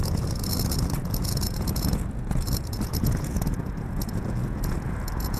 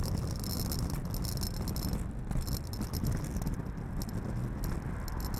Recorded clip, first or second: second